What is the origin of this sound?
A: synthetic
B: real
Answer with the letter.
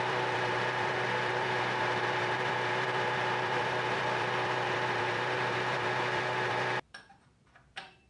A